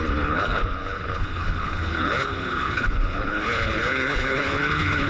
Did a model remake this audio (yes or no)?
yes